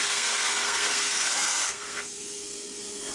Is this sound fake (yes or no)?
yes